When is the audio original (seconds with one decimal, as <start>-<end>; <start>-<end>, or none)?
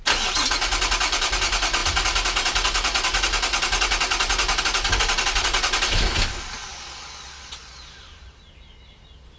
0.0-6.7; 8.0-9.4